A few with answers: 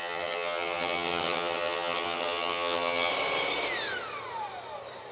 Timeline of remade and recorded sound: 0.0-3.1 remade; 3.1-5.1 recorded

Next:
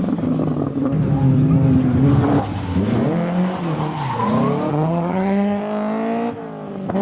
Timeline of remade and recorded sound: 0.0-4.7 recorded; 4.7-5.6 remade; 5.6-7.0 recorded